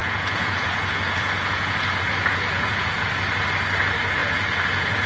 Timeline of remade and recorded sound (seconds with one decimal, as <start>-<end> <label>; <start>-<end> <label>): 0.0-3.1 remade; 3.1-4.2 recorded; 4.2-5.1 remade